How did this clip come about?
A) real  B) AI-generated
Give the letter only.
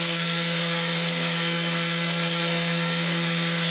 B